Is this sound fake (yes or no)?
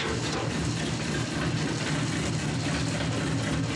no